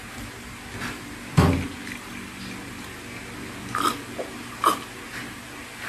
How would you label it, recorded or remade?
recorded